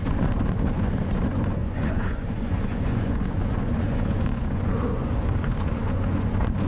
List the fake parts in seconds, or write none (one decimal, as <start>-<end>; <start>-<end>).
0.0-6.7